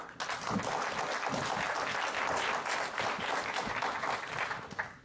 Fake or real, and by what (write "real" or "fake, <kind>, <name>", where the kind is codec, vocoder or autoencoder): real